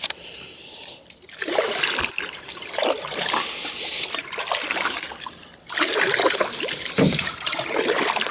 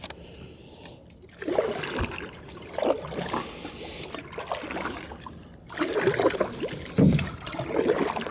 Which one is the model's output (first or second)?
first